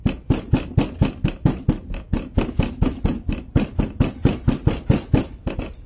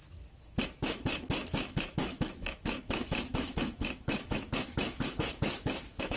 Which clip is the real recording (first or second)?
first